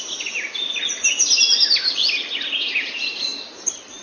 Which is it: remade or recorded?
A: recorded